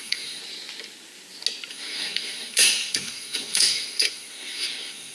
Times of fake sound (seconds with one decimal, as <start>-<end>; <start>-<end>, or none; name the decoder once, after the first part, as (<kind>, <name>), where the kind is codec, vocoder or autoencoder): 0.0-0.4 (codec, SNAC); 1.7-5.1